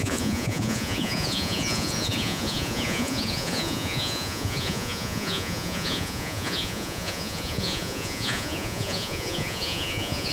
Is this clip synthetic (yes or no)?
yes